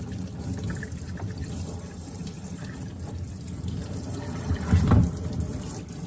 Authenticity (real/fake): real